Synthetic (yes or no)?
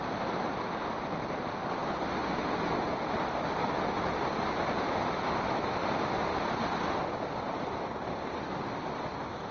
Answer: no